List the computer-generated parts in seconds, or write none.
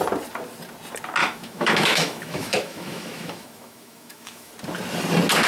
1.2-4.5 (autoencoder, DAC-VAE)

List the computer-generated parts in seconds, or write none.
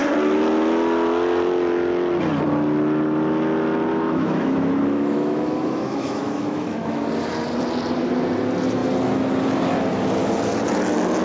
3.9-7.0 (autoencoder, DAC-VAE)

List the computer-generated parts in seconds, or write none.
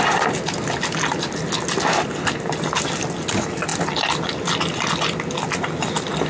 none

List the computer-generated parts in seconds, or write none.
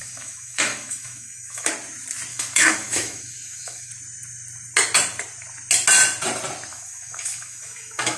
0.0-1.7 (autoencoder, DAC-VAE); 2.3-3.9; 6.7-8.2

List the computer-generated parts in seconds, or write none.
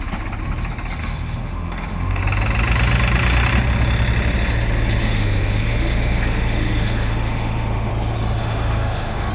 1.0-2.2 (autoencoder, DAC-VAE); 5.0-7.9; 8.4-9.3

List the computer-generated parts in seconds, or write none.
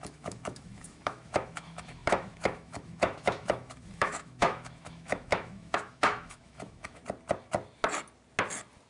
0.0-7.0 (autoencoder, DAC-VAE)